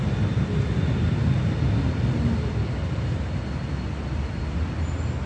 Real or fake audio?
real